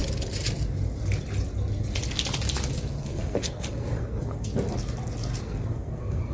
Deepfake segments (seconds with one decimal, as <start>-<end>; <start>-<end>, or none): 3.0-4.5; 5.4-6.3